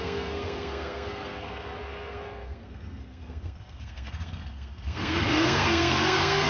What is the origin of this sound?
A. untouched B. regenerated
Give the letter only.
B